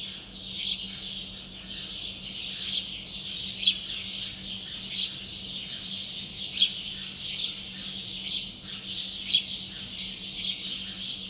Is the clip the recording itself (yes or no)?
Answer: yes